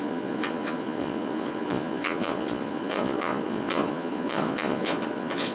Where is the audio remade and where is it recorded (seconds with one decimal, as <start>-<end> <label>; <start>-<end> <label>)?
0.0-5.5 remade